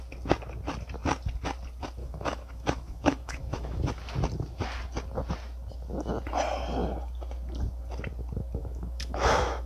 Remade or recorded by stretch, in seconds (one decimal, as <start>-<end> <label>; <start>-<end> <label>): 0.0-2.0 recorded; 2.0-3.8 remade; 3.8-8.6 recorded; 8.6-9.7 remade